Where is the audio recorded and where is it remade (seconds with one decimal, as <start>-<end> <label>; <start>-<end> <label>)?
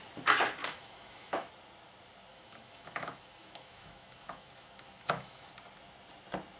0.0-0.6 recorded; 0.6-1.5 remade; 1.5-2.3 recorded; 2.3-5.5 remade; 5.5-6.6 recorded